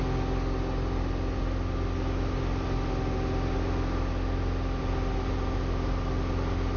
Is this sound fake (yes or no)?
no